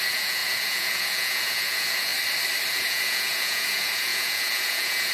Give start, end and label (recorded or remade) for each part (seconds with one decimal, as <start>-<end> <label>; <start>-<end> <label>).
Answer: 0.0-2.1 remade; 2.1-2.7 recorded; 2.7-5.1 remade